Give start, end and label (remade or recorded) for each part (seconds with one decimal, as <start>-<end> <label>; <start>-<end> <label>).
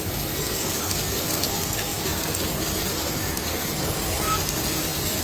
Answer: 0.0-5.2 remade